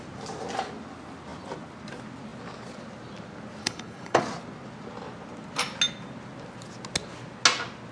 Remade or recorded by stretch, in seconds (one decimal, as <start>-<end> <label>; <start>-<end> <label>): 0.0-3.6 recorded; 3.6-4.2 remade; 4.2-7.9 recorded